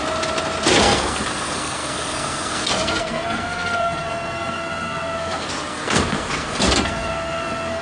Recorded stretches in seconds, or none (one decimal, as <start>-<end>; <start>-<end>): 0.0-0.8